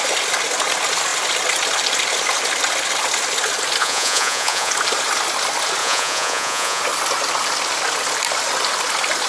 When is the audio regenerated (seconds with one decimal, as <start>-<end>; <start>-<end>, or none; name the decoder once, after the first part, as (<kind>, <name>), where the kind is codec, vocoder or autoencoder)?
3.8-4.7 (vocoder, Vocos); 5.8-6.8